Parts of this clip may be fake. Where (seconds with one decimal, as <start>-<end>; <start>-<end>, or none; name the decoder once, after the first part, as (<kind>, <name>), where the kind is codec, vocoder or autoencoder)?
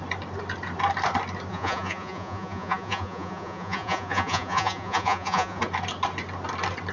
1.5-5.6 (vocoder, Vocos)